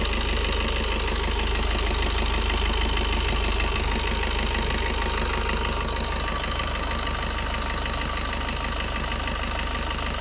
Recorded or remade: recorded